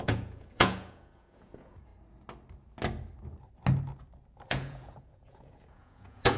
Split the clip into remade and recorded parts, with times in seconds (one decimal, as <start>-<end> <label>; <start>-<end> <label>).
0.0-1.9 remade; 1.9-4.4 recorded; 4.4-6.4 remade